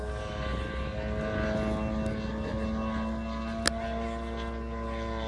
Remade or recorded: recorded